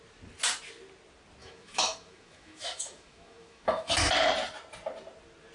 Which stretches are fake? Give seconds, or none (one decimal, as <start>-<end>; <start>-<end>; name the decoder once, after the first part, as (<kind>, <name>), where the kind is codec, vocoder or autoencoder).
1.4-3.9 (autoencoder, DAC-VAE)